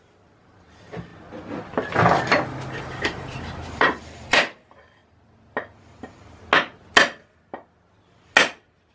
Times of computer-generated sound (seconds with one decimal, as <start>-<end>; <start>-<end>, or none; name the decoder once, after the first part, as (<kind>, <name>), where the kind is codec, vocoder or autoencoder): 0.0-1.1 (vocoder, BigVGAN v2); 2.8-5.0